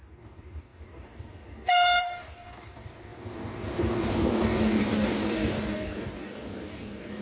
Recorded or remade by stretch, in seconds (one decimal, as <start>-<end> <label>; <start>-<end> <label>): 0.0-7.2 remade